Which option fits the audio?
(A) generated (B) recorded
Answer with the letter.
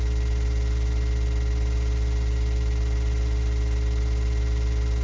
B